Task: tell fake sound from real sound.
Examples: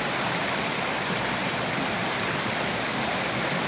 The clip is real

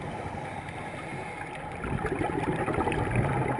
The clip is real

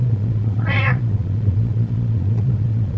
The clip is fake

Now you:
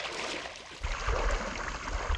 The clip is real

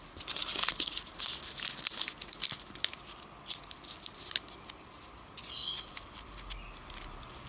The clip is real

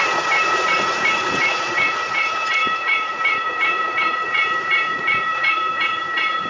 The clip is fake